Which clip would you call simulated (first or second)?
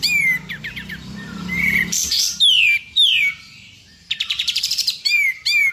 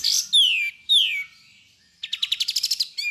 first